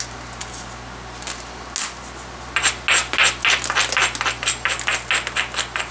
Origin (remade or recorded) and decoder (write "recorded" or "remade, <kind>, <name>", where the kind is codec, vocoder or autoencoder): recorded